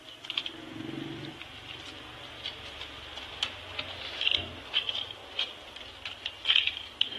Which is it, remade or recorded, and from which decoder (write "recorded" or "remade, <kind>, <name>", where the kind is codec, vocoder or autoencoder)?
remade, vocoder, BigVGAN v2